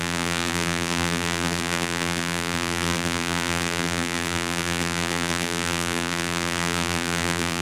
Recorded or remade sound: remade